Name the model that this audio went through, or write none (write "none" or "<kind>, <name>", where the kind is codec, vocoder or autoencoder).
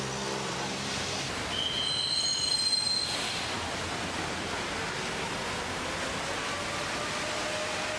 none